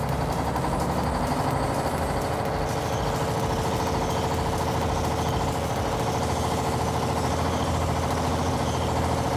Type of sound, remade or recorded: recorded